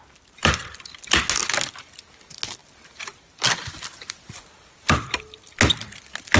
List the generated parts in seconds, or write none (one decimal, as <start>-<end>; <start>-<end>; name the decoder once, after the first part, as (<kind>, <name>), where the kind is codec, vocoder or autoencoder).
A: none